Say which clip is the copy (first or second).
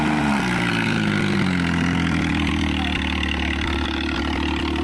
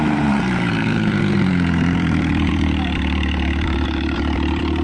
second